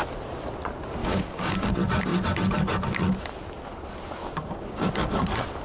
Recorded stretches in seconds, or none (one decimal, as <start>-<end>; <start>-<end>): 0.0-1.0; 1.7-4.2; 4.9-5.6